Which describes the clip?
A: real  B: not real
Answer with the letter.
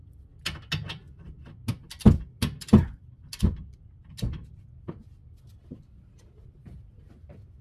A